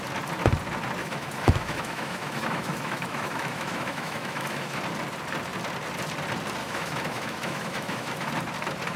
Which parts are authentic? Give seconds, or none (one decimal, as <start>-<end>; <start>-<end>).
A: 0.0-1.0; 4.8-6.6; 8.3-9.0